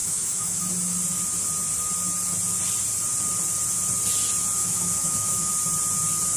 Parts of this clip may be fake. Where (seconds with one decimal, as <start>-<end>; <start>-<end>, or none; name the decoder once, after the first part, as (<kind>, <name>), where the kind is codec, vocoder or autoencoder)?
0.0-0.6 (autoencoder, DAC-VAE); 4.6-5.5